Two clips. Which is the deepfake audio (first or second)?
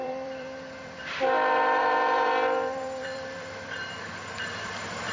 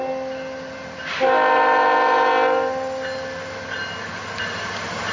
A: first